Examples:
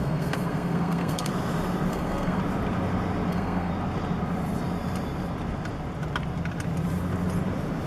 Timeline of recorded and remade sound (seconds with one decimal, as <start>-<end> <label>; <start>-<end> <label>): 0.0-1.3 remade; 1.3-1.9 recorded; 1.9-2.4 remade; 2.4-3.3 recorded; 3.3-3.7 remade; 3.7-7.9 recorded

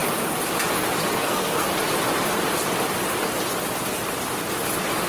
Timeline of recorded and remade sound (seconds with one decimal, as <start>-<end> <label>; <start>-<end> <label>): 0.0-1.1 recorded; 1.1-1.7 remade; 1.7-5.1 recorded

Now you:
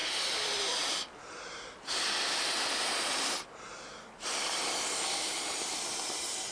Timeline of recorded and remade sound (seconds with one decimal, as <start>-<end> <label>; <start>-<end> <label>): 0.0-6.5 recorded

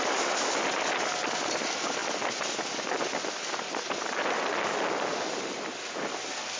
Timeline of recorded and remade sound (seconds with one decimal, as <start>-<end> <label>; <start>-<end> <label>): 0.0-6.6 recorded

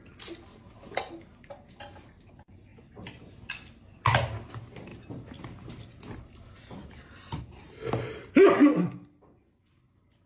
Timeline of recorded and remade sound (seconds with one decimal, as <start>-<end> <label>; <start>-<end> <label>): 0.0-10.3 recorded